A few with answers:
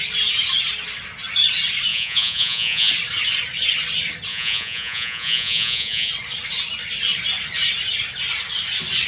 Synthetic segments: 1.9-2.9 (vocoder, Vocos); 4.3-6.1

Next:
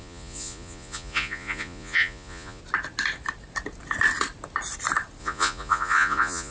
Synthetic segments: 0.0-2.6 (vocoder, Vocos); 5.2-6.5

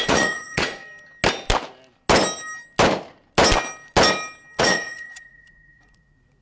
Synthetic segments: 0.0-0.8 (vocoder, Vocos); 4.6-6.4

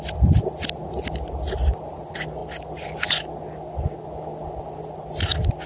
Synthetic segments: none

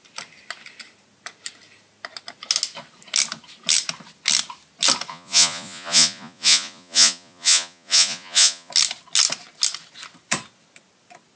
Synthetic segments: 5.1-8.7 (vocoder, Vocos)